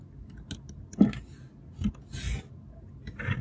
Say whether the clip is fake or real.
real